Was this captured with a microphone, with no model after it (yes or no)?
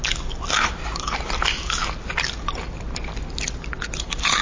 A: yes